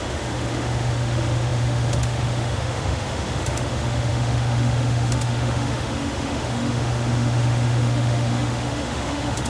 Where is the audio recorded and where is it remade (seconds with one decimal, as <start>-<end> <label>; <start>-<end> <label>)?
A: 0.0-9.5 remade